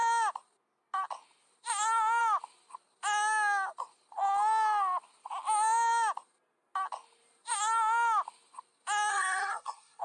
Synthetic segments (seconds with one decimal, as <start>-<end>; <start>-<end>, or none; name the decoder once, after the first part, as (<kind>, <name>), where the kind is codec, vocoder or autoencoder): 9.1-10.0 (codec, SNAC)